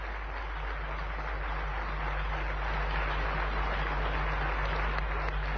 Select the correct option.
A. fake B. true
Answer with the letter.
B